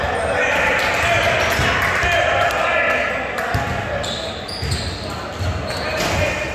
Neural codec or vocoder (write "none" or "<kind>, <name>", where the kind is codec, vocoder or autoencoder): none